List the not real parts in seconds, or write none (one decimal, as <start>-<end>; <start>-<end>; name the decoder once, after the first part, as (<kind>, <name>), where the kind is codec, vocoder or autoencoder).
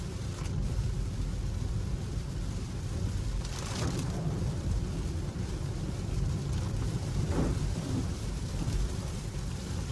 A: 0.0-0.8 (vocoder, BigVGAN v2); 1.7-9.9